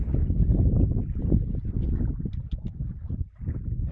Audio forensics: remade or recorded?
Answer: recorded